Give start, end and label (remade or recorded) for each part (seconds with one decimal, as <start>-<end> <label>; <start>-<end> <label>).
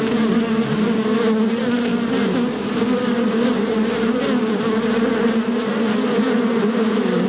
0.0-7.3 recorded